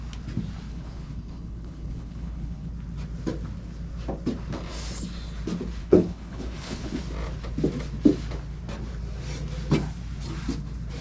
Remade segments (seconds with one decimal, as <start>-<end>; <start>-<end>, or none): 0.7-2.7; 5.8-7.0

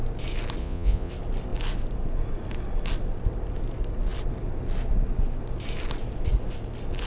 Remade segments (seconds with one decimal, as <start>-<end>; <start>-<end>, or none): 0.6-1.1

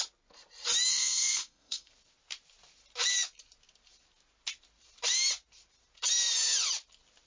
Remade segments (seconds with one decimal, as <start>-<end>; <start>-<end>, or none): 0.9-1.9

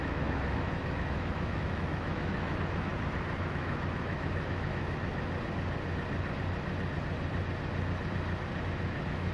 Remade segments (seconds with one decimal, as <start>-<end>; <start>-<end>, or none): 0.0-2.9; 3.5-5.1; 8.6-9.3

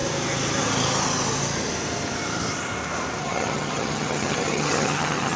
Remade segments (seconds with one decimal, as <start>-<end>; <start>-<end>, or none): 3.2-5.4

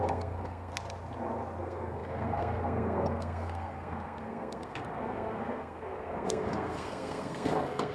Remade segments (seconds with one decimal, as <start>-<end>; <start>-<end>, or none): 0.0-0.7; 1.6-7.9